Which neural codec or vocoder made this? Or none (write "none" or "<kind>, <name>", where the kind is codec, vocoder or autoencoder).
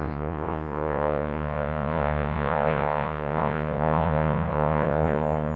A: vocoder, Vocos